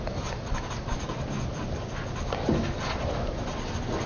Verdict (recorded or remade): recorded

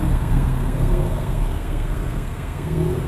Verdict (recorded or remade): remade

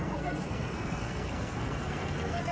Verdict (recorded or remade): remade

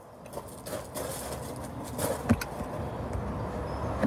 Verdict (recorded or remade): recorded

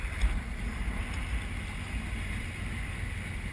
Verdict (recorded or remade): recorded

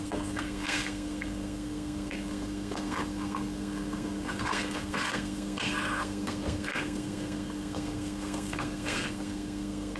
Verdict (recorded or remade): remade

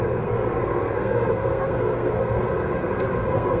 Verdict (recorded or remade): remade